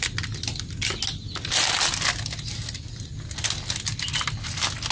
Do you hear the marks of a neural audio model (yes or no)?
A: no